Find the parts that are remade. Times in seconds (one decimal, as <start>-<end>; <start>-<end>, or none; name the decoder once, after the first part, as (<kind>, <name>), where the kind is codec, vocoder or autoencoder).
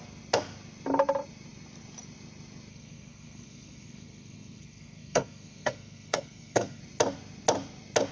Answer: 2.7-6.8 (codec, SNAC)